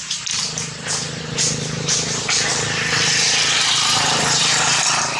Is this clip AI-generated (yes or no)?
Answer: yes